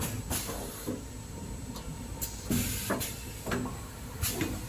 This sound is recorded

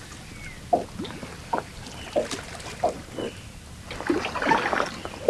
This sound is recorded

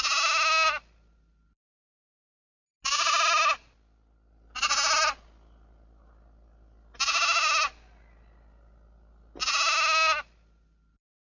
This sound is recorded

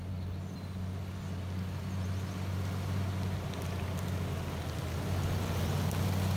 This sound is recorded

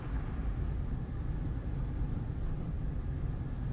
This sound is recorded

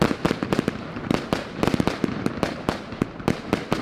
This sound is recorded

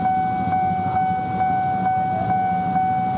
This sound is recorded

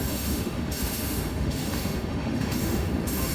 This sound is remade